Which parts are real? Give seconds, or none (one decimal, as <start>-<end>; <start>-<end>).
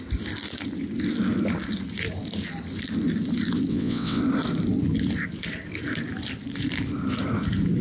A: 0.0-3.7; 4.2-7.8